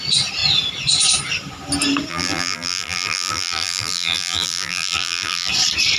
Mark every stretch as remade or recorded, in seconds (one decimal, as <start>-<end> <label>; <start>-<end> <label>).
0.0-2.1 recorded; 2.1-5.5 remade; 5.5-6.0 recorded